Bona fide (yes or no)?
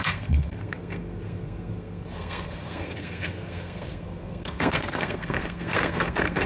no